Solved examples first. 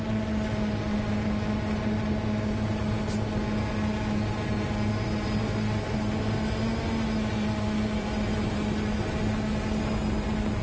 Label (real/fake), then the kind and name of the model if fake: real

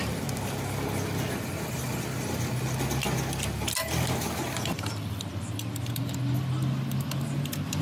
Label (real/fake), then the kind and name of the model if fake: real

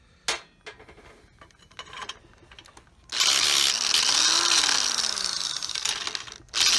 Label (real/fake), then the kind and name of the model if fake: real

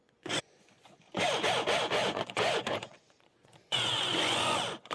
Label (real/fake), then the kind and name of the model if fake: fake, vocoder, Vocos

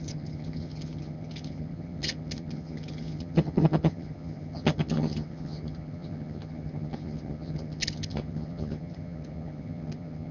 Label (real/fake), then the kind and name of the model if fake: fake, vocoder, HiFi-GAN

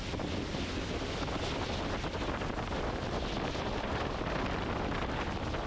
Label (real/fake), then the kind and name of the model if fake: real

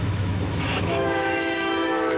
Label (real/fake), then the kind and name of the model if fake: fake, autoencoder, DAC-VAE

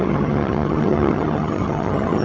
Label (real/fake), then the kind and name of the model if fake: fake, vocoder, HiFi-GAN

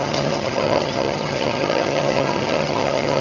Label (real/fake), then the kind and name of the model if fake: fake, vocoder, HiFi-GAN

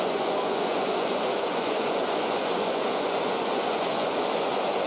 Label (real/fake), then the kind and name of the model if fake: fake, vocoder, Vocos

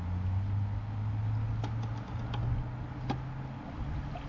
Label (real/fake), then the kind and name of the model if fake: real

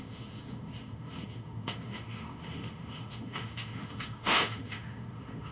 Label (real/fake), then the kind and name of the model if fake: fake, autoencoder, DAC-VAE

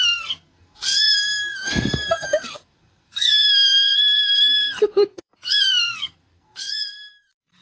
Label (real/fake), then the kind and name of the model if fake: fake, codec, SNAC